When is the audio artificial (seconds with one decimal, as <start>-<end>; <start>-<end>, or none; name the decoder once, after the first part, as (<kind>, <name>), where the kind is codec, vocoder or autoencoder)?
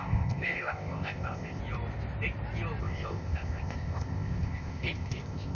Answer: 0.0-1.6 (codec, ZipCodec); 2.8-5.5